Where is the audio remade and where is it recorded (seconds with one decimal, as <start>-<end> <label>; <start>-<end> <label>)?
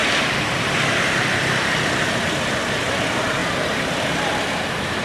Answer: 0.0-0.7 recorded; 0.7-5.0 remade